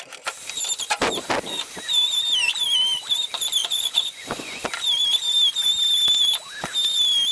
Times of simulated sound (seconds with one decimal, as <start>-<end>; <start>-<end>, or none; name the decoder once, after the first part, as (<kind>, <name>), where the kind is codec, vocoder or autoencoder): 3.6-4.7 (vocoder, Vocos)